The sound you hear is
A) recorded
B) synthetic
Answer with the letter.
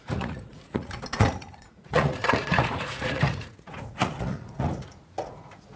B